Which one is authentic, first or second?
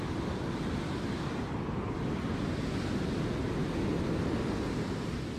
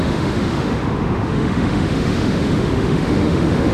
first